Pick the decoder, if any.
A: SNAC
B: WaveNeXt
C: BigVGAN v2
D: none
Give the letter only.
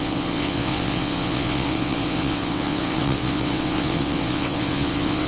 B